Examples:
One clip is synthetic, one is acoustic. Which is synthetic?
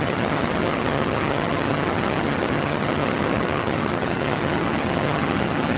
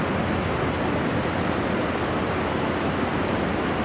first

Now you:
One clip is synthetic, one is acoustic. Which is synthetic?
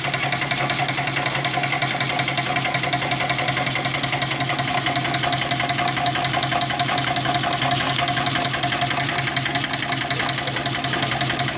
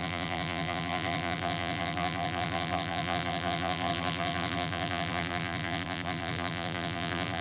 second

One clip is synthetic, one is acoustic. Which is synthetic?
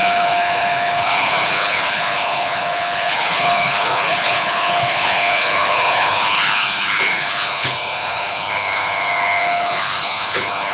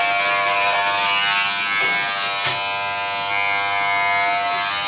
first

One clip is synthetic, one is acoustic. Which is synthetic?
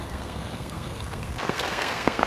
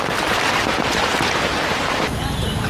first